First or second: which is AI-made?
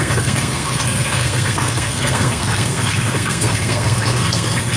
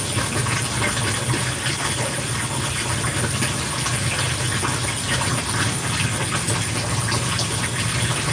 first